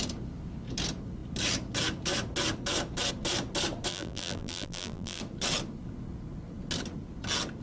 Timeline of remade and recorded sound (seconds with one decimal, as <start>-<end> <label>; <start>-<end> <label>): 0.0-3.9 recorded; 3.9-5.2 remade; 5.2-7.6 recorded